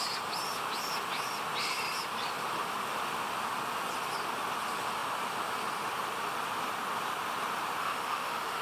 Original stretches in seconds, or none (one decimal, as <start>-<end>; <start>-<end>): 0.0-7.8